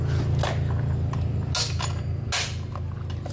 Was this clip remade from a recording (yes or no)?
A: no